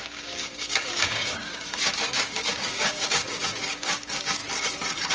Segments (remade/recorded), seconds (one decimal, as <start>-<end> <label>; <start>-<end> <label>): 0.0-4.4 remade; 4.4-5.1 recorded